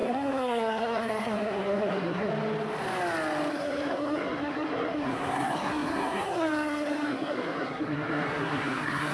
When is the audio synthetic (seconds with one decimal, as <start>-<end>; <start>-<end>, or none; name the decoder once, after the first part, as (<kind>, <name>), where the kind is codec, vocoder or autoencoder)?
0.0-2.3 (codec, SNAC); 3.5-9.1

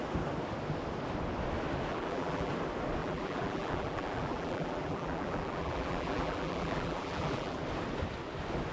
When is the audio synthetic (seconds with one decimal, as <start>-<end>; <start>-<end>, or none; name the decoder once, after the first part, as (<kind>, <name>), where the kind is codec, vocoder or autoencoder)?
1.9-2.5 (vocoder, BigVGAN v2); 3.0-7.6

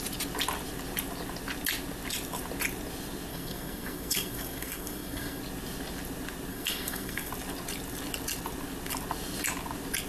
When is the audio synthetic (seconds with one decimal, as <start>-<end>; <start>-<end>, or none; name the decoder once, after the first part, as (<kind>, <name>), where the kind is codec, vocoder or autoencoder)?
3.3-5.4 (codec, SNAC); 6.5-7.3